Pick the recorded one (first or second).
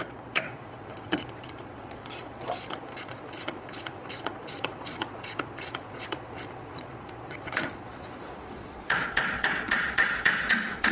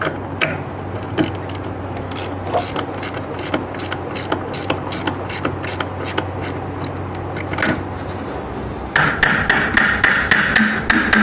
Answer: second